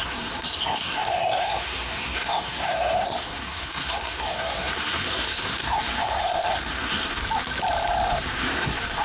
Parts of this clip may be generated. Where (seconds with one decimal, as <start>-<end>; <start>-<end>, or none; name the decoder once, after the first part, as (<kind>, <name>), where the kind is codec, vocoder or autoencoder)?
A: 0.0-7.2 (codec, SNAC); 8.1-9.0